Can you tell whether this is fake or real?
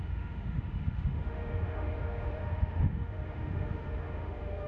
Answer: fake